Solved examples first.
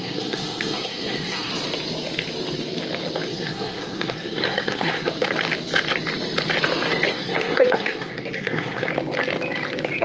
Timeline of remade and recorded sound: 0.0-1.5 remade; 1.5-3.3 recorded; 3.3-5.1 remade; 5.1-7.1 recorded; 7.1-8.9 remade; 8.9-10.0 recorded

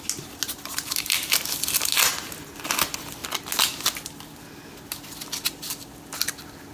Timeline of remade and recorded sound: 0.0-6.7 recorded

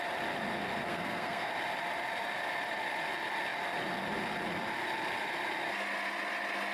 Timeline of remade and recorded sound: 0.0-0.9 recorded; 0.9-1.5 remade; 1.5-6.7 recorded

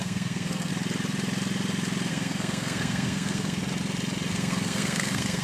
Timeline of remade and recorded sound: 0.0-0.7 remade; 0.7-2.1 recorded; 2.1-3.6 remade; 3.6-4.3 recorded; 4.3-5.4 remade